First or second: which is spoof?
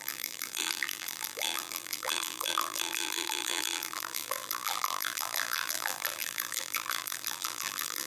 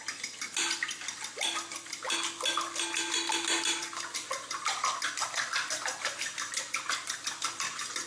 first